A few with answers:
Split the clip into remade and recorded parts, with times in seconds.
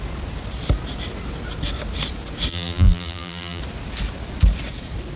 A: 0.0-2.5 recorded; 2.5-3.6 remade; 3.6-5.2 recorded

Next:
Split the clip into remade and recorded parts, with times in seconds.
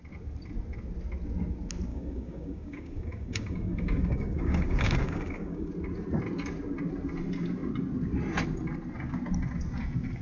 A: 0.0-1.9 recorded; 1.9-5.7 remade; 5.7-10.2 recorded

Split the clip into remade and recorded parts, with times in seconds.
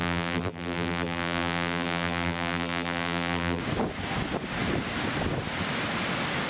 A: 0.0-3.6 remade; 3.6-6.5 recorded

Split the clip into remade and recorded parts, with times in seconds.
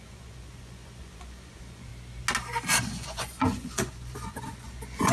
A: 0.0-1.9 remade; 1.9-2.8 recorded; 2.8-5.1 remade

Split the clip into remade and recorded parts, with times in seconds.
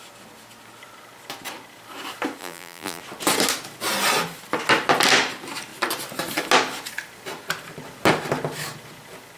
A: 0.0-2.4 recorded; 2.4-3.0 remade; 3.0-9.4 recorded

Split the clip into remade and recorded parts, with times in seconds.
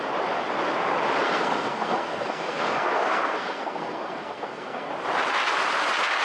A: 0.0-1.2 recorded; 1.2-4.9 remade; 4.9-6.2 recorded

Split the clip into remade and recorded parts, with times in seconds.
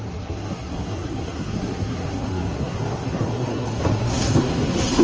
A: 0.0-5.0 remade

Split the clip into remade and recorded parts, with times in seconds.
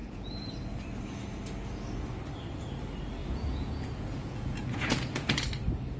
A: 0.0-0.5 remade; 0.5-3.2 recorded; 3.2-5.4 remade; 5.4-6.0 recorded